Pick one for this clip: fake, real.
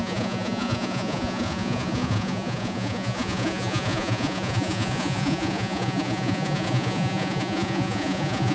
fake